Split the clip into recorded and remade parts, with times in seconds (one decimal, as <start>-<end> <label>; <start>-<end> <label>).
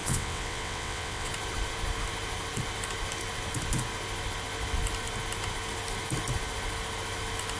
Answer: 0.0-1.3 remade; 1.3-7.6 recorded